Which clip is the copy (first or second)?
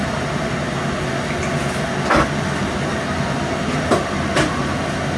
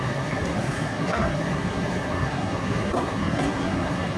second